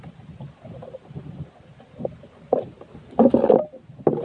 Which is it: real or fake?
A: real